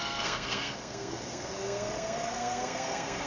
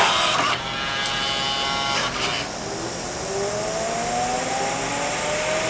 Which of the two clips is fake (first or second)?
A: first